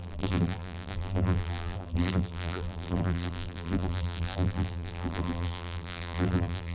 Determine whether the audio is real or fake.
fake